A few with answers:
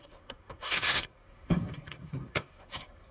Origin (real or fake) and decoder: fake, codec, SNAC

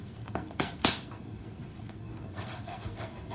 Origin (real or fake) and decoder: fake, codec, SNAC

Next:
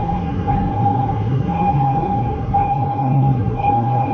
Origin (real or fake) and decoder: fake, codec, SNAC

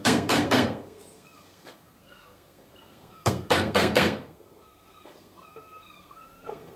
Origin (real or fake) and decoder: fake, codec, SNAC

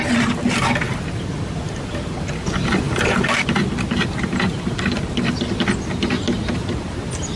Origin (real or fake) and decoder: real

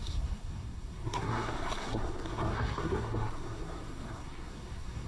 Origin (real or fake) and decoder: fake, codec, SNAC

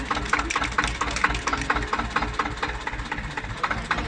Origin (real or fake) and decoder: real